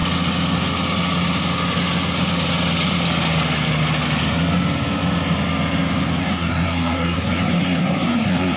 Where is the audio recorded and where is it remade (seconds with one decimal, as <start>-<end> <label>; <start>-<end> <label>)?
0.0-6.2 recorded; 6.2-8.6 remade